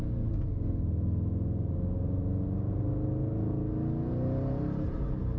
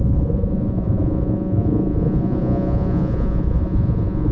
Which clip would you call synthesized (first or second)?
second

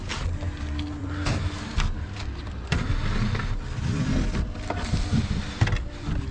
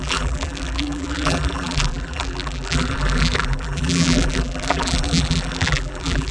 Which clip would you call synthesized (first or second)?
second